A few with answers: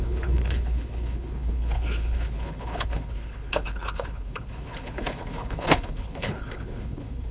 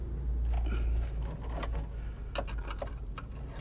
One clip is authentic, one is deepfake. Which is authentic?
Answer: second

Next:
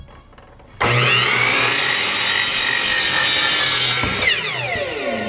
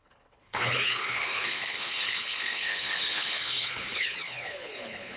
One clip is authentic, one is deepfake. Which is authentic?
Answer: first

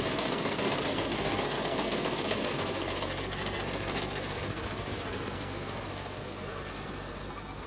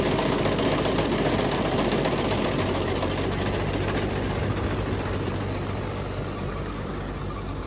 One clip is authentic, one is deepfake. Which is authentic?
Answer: second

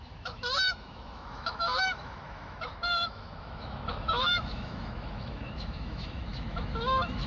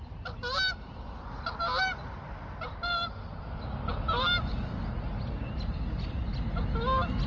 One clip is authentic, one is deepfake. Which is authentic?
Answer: second